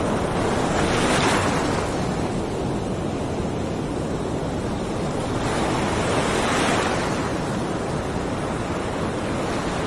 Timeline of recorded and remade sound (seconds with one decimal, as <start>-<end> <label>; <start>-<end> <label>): 0.0-9.9 recorded